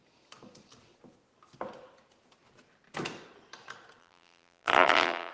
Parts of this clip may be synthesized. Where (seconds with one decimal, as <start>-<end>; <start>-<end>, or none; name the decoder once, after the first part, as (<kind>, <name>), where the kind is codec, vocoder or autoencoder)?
4.0-5.3 (vocoder, BigVGAN v2)